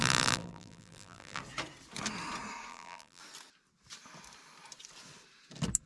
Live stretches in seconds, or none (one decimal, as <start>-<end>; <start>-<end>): 1.4-2.7; 3.2-5.9